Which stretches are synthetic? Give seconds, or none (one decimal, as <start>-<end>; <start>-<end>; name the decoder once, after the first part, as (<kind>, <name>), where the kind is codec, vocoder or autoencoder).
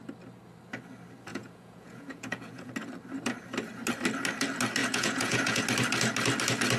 1.3-2.7 (vocoder, Vocos); 4.8-5.6